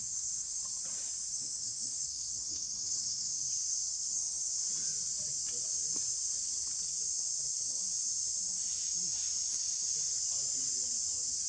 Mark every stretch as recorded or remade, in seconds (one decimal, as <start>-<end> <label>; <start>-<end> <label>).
0.0-0.6 remade; 0.6-1.3 recorded; 1.3-3.3 remade; 3.3-3.9 recorded; 3.9-4.5 remade; 4.5-11.5 recorded